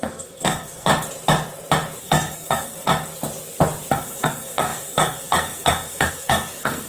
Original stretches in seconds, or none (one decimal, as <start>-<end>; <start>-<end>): 0.9-2.0; 2.9-3.9